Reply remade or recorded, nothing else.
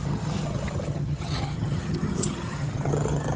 remade